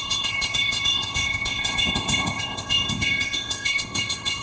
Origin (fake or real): fake